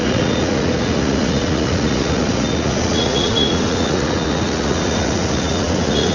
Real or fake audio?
fake